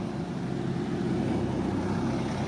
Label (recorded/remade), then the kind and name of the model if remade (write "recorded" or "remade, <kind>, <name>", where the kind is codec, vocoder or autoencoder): recorded